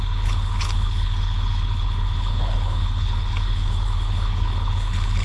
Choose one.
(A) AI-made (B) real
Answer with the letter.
A